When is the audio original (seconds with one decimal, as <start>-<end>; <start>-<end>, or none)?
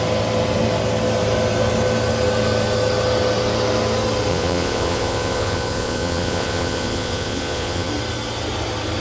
0.0-4.3; 7.9-9.0